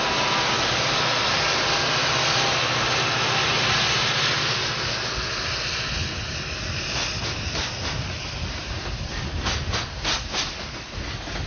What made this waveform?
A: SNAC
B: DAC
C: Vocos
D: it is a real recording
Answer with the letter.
D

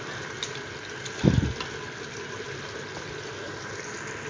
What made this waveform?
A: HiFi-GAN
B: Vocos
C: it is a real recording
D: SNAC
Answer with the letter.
C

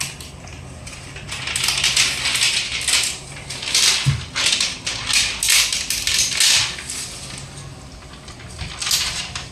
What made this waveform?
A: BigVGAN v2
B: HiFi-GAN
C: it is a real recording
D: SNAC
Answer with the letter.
C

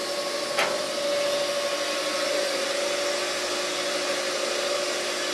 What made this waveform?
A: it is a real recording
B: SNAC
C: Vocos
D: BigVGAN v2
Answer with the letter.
A